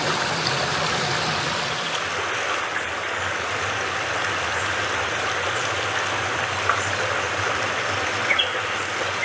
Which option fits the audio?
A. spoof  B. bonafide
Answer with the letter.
B